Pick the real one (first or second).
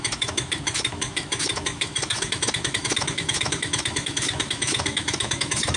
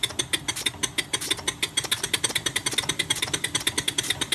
second